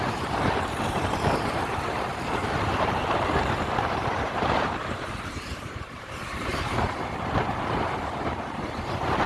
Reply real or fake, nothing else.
fake